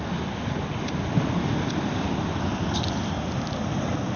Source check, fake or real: real